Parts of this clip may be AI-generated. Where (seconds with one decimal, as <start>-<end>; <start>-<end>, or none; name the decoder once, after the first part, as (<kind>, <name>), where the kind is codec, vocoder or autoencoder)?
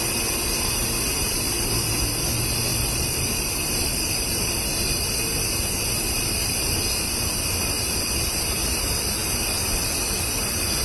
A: 2.7-4.3 (vocoder, BigVGAN v2)